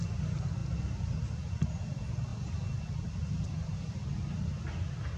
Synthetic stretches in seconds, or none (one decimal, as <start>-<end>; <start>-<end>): none